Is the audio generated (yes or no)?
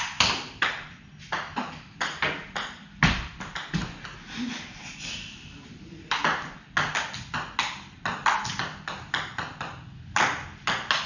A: no